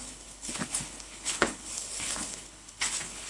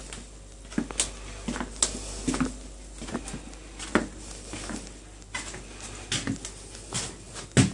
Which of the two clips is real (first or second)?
second